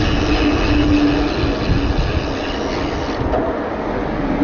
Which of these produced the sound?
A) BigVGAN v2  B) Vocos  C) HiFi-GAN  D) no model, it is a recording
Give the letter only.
D